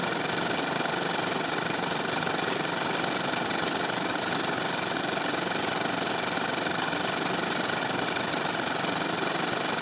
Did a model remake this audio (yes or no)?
no